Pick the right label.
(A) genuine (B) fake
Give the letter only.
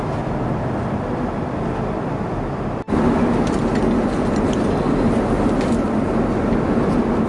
A